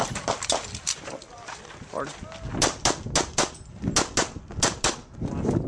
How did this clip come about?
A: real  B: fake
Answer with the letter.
A